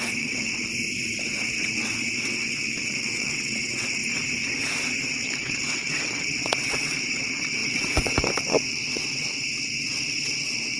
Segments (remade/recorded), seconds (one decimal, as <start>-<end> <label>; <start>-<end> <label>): 0.0-0.7 remade; 0.7-1.4 recorded; 1.4-4.0 remade; 4.0-5.1 recorded; 5.1-10.8 remade

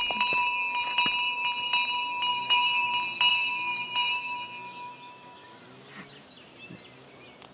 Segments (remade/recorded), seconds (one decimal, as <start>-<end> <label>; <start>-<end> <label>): 0.0-2.3 recorded; 2.3-2.9 remade; 2.9-3.3 recorded; 3.3-5.6 remade; 5.6-7.5 recorded